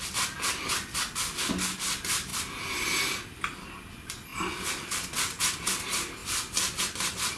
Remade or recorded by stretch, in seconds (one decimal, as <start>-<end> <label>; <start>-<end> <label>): 0.0-6.2 recorded; 6.2-6.8 remade; 6.8-7.4 recorded